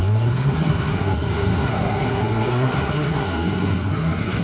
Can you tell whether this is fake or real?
fake